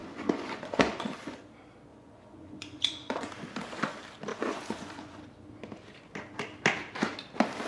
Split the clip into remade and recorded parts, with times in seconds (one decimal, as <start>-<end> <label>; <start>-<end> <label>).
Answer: 0.0-1.4 remade; 1.4-1.9 recorded; 1.9-3.3 remade; 3.3-4.3 recorded; 4.3-5.2 remade; 5.2-7.7 recorded